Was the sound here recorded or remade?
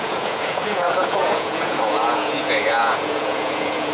remade